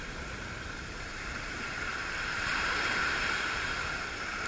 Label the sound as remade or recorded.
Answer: remade